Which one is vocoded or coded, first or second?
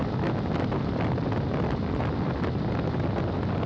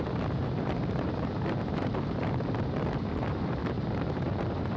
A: second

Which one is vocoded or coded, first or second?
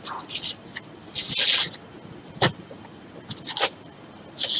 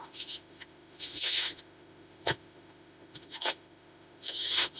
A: second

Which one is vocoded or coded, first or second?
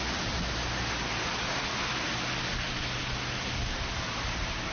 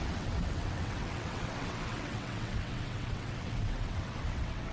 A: second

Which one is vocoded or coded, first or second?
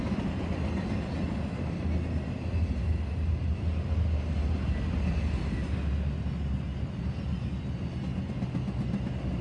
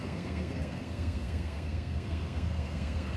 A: second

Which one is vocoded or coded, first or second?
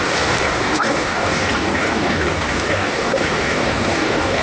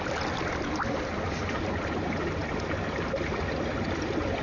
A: first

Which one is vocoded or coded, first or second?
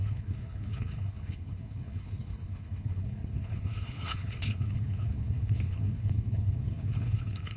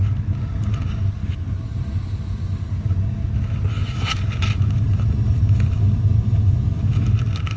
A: first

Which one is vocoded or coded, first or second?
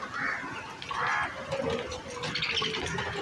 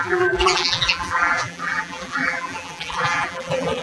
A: second